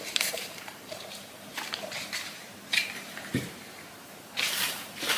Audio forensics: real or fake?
fake